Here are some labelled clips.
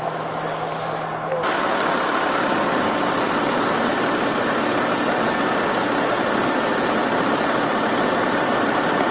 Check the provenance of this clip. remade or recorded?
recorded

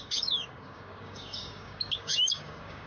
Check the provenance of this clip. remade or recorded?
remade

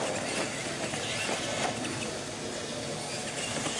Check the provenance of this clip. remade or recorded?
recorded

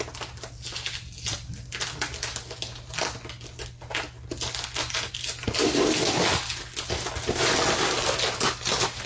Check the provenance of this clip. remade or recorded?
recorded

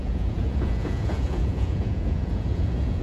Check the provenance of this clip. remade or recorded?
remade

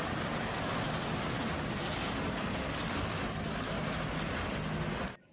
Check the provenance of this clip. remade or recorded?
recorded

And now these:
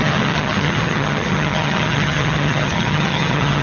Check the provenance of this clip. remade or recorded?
remade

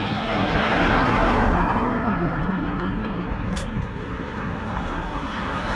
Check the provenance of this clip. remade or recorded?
remade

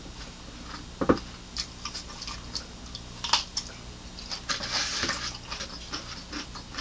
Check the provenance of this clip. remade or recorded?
recorded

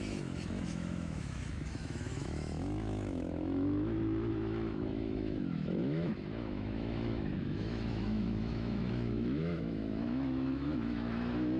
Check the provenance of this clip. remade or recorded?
remade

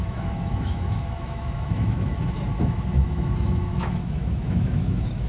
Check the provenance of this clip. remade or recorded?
remade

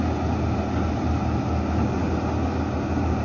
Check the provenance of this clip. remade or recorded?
recorded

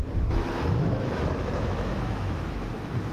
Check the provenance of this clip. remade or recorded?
remade